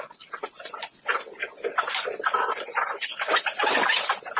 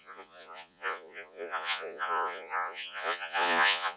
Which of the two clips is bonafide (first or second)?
first